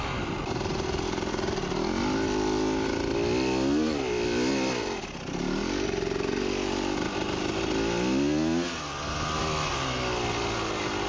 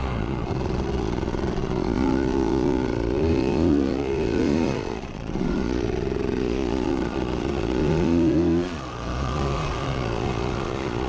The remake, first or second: second